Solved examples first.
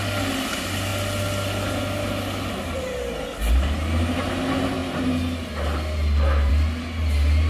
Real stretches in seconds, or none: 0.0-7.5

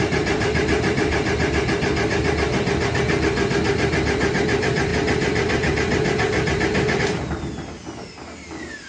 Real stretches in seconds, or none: 0.0-8.9

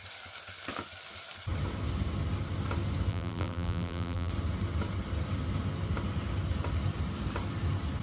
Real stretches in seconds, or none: 0.0-3.1; 4.3-8.0